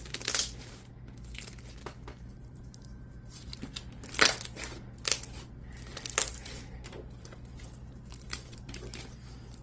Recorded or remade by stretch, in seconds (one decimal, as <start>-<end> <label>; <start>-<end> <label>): 0.0-1.8 recorded; 1.8-3.6 remade; 3.6-6.3 recorded; 6.3-8.7 remade; 8.7-9.6 recorded